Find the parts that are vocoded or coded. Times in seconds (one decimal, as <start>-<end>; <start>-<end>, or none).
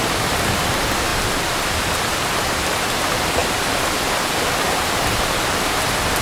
0.0-6.2